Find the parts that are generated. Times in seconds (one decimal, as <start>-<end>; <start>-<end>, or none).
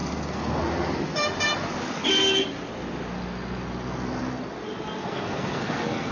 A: 0.0-0.6; 5.0-6.1